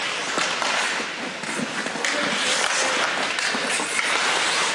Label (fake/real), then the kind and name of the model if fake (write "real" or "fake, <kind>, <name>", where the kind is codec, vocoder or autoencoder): real